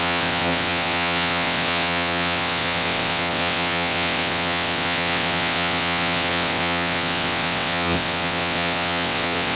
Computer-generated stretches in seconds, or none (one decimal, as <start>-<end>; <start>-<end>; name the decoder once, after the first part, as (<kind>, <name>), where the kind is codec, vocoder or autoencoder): 0.0-9.5 (vocoder, WaveNeXt)